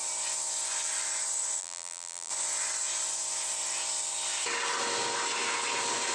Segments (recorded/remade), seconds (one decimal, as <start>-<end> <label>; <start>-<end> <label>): 0.0-1.6 recorded; 1.6-2.3 remade; 2.3-6.1 recorded